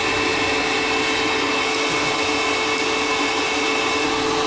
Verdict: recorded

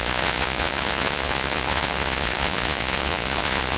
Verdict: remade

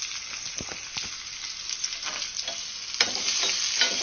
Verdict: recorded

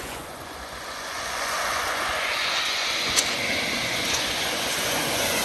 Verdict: remade